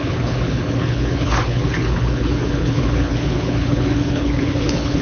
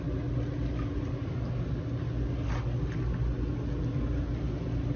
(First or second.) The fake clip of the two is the first